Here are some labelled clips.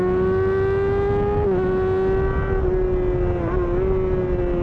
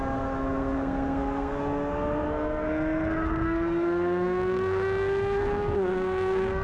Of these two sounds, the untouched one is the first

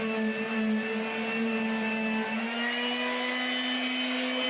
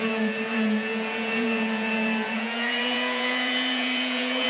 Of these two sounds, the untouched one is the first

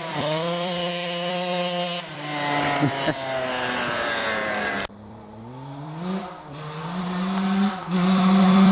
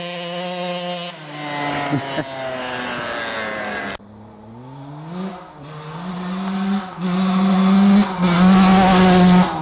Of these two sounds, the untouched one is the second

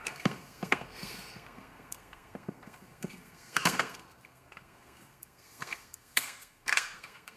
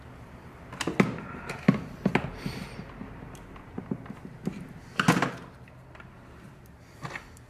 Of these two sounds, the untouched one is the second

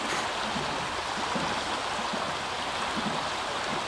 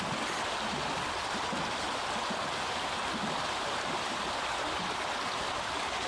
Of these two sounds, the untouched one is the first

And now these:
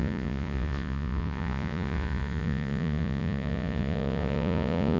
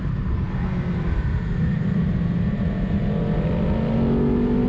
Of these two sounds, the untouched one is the second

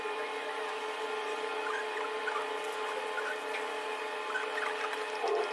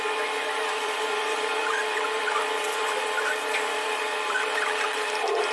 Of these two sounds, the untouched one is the first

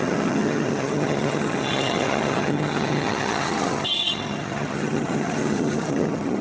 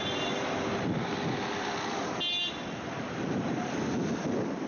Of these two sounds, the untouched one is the second